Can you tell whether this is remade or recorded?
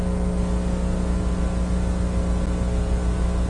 recorded